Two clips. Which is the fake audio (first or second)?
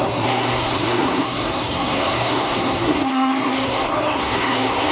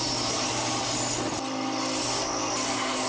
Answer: first